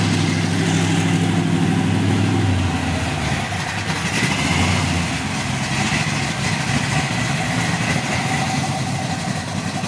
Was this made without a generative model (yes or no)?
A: yes